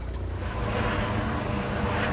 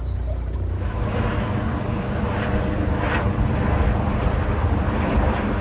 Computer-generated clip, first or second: second